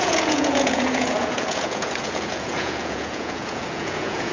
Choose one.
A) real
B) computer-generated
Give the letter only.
B